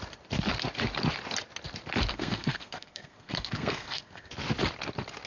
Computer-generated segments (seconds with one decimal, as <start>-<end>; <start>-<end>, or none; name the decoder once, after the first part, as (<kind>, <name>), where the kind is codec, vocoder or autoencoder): 2.1-4.3 (codec, SNAC)